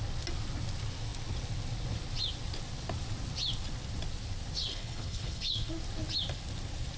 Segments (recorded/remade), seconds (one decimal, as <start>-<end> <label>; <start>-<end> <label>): 0.0-4.7 recorded; 4.7-5.7 remade; 5.7-7.0 recorded